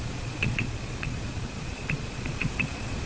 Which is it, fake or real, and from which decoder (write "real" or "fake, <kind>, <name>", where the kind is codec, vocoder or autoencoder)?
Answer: fake, vocoder, Vocos